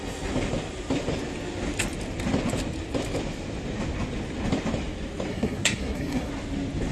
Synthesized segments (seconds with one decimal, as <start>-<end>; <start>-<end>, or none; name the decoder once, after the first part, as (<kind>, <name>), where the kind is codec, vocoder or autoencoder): 5.3-6.3 (codec, SNAC)